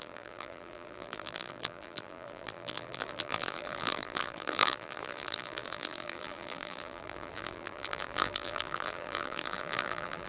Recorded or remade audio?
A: remade